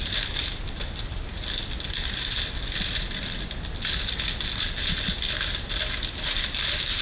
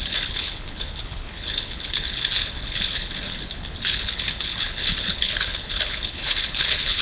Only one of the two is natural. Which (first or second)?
first